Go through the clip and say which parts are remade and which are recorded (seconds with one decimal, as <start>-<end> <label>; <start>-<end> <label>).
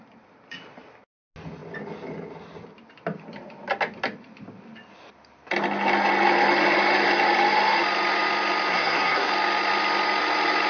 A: 0.0-8.7 recorded; 8.7-9.3 remade; 9.3-10.7 recorded